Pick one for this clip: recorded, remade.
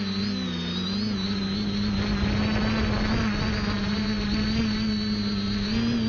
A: recorded